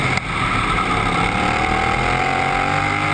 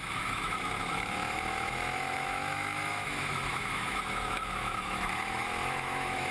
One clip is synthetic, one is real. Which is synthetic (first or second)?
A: second